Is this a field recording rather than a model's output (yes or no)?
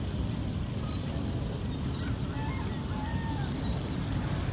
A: yes